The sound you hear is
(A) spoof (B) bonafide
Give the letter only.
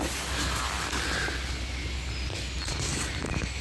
B